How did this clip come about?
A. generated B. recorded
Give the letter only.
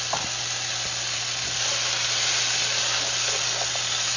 B